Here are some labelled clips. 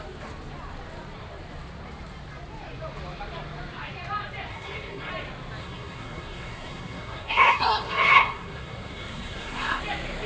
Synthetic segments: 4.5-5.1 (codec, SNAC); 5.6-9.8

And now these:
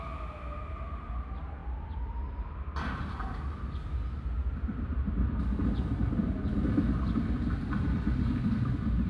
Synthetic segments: none